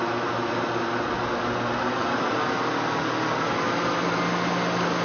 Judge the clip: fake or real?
real